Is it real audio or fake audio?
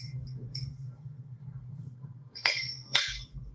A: fake